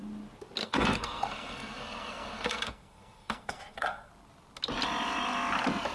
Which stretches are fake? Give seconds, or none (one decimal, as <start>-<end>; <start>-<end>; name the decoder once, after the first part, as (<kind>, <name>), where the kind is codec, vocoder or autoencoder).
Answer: 0.6-4.1 (codec, SNAC)